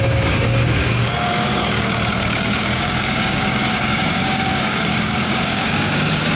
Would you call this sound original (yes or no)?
no